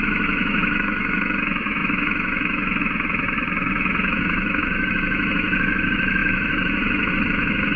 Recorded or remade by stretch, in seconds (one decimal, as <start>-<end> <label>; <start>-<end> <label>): 0.0-7.8 remade